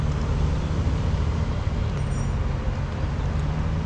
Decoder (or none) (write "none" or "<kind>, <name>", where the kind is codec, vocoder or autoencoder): none